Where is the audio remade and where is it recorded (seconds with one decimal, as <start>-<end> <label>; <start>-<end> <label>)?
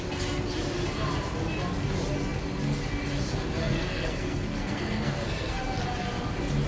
0.0-3.6 recorded; 3.6-5.6 remade; 5.6-6.7 recorded